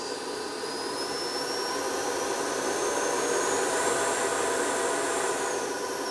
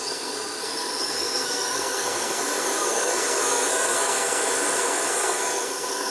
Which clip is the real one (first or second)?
first